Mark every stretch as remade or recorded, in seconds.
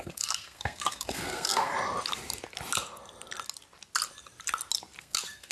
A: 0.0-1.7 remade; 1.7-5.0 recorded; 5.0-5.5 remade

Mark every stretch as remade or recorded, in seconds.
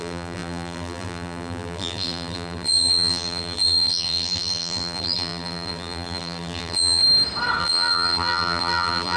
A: 0.0-7.0 remade; 7.0-7.6 recorded; 7.6-9.2 remade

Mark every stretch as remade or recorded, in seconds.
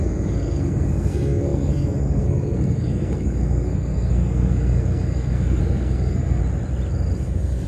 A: 0.0-6.4 remade; 6.4-7.2 recorded; 7.2-7.7 remade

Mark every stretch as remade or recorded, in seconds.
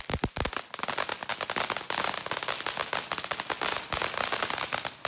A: 0.0-5.1 recorded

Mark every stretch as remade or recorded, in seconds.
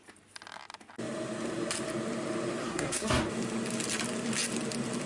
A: 0.0-2.6 recorded; 2.6-3.2 remade; 3.2-5.1 recorded